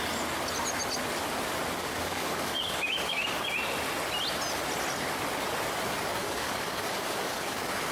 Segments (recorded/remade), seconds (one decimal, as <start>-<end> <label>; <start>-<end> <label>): 0.0-1.8 recorded; 1.8-3.4 remade; 3.4-6.2 recorded; 6.2-7.9 remade